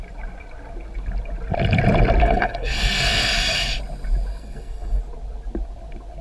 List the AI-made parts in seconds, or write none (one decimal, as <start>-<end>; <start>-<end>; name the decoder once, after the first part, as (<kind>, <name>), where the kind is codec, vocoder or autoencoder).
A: 2.2-3.6 (codec, SNAC); 4.3-5.0